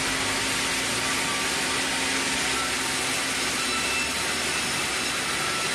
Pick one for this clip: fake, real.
real